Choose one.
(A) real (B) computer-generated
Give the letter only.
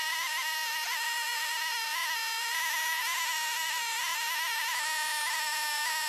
B